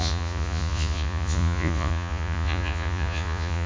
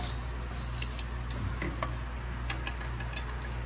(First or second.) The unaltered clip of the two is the second